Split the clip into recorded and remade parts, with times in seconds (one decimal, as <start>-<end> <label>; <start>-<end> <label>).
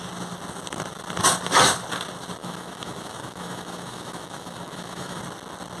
0.0-2.4 recorded; 2.4-5.2 remade; 5.2-5.8 recorded